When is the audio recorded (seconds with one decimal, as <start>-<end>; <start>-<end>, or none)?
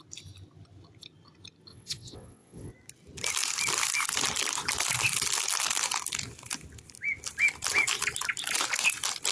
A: 0.0-1.7; 2.7-9.3